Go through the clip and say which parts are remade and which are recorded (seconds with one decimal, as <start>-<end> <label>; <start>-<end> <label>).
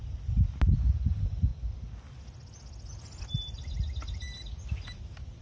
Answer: 0.0-5.4 recorded